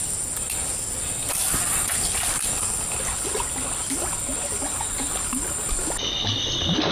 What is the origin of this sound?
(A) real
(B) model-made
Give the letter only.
A